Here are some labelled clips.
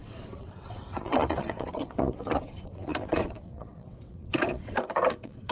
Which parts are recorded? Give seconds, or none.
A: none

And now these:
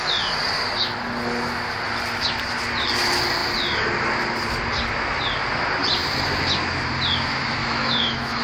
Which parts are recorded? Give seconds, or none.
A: 0.0-7.6

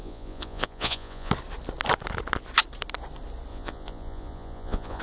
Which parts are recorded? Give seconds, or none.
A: 1.3-3.5